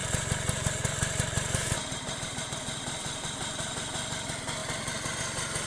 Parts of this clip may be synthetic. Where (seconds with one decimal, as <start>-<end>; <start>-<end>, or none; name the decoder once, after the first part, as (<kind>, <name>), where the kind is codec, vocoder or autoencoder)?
0.0-3.4 (vocoder, BigVGAN v2)